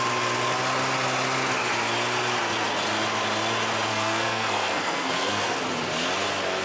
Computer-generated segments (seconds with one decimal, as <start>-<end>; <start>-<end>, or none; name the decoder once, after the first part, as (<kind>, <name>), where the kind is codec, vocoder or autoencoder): 3.9-5.6 (codec, SNAC)